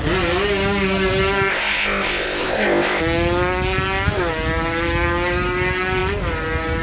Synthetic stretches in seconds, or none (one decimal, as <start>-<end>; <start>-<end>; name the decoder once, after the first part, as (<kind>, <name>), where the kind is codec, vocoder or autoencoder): 1.5-3.0 (codec, ZipCodec)